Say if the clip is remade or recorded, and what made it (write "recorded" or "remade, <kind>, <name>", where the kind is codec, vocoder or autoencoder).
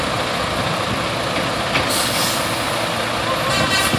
recorded